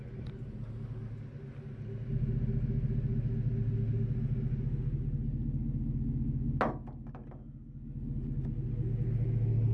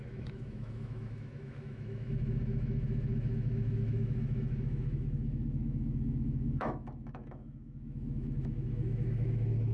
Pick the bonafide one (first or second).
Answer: first